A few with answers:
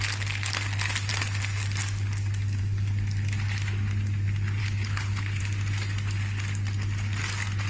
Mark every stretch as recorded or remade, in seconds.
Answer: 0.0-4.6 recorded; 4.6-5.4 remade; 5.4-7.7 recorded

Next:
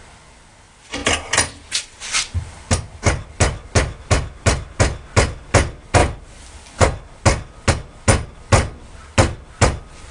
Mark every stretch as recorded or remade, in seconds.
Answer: 0.0-10.1 recorded

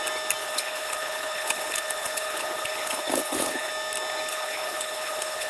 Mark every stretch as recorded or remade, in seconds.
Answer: 0.0-0.4 recorded; 0.4-3.7 remade; 3.7-4.3 recorded; 4.3-5.5 remade

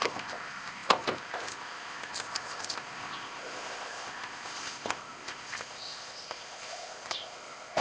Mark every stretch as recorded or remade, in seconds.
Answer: 0.0-7.8 remade

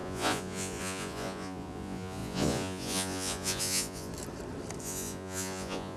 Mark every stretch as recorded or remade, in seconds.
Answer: 0.0-4.1 remade; 4.1-4.8 recorded; 4.8-6.0 remade